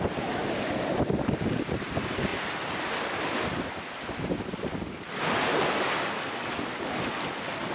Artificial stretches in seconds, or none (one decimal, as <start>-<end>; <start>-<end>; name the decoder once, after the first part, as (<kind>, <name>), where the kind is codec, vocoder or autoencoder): none